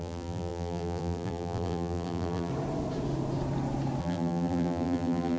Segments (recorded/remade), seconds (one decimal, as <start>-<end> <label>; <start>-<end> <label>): 0.0-2.5 remade; 2.5-4.0 recorded; 4.0-5.4 remade